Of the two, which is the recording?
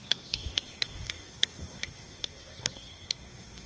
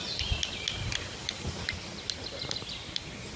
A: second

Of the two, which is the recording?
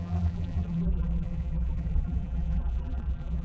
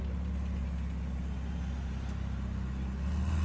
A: second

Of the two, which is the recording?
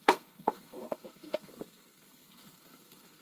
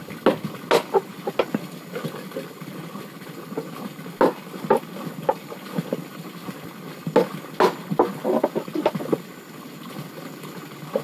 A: second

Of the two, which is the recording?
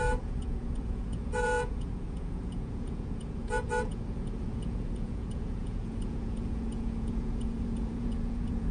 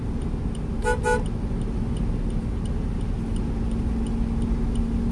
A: second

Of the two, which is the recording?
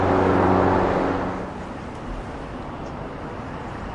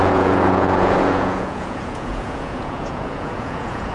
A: first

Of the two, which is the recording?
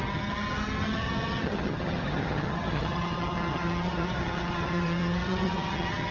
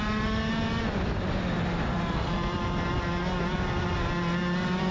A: second